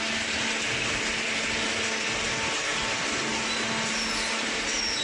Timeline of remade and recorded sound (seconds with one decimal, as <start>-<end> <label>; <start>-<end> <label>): 0.0-5.0 recorded